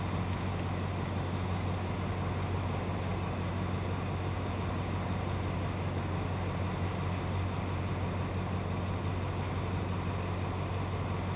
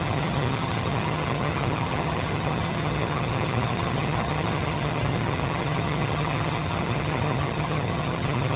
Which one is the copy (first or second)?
second